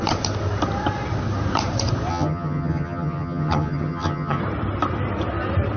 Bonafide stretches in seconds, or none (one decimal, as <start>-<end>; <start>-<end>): 0.0-2.1; 4.4-5.8